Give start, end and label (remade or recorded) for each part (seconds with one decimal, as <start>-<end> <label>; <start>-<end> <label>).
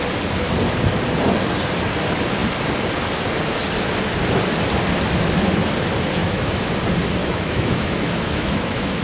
0.0-6.2 recorded; 6.2-6.7 remade; 6.7-7.2 recorded; 7.2-9.0 remade